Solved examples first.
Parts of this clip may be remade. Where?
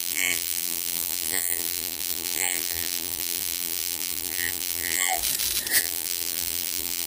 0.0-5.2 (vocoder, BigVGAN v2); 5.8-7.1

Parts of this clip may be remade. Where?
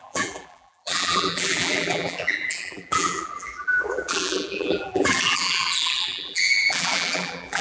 0.0-7.6 (vocoder, BigVGAN v2)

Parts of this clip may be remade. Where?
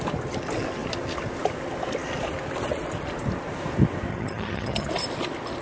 4.1-4.9 (vocoder, HiFi-GAN)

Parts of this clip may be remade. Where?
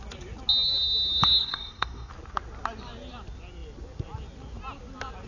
1.4-2.1 (codec, SNAC)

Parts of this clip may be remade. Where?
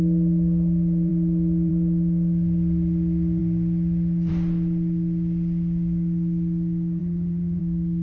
7.0-7.6 (vocoder, Vocos)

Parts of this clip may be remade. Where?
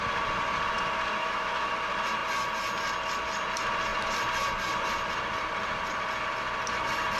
1.2-1.7 (autoencoder, DAC-VAE)